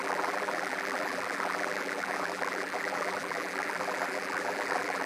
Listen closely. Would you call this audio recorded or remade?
remade